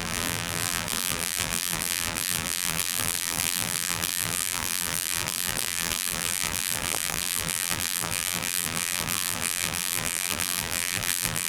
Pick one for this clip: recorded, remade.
remade